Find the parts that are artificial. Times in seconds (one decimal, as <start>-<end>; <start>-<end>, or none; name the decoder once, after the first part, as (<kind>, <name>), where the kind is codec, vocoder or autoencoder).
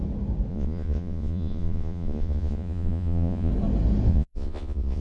0.5-3.5 (vocoder, Vocos); 4.1-5.0